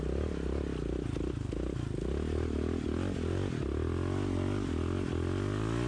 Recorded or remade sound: recorded